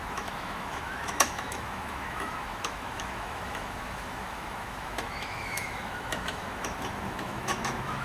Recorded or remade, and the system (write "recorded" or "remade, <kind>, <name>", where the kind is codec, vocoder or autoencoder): remade, autoencoder, DAC-VAE